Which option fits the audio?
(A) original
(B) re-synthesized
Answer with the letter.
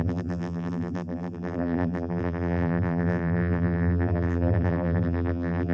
B